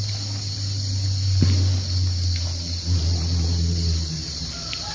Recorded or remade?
recorded